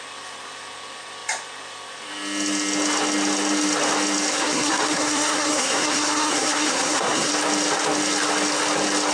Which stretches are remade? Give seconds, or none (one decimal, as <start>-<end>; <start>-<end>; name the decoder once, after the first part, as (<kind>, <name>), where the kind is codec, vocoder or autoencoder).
4.3-7.3 (codec, SNAC)